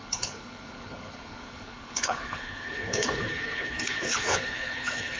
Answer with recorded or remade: remade